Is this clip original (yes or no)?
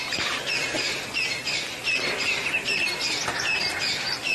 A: yes